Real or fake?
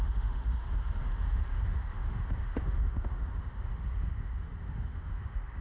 fake